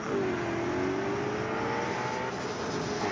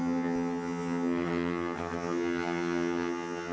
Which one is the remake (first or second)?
second